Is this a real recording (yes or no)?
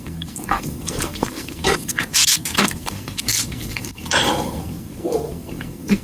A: no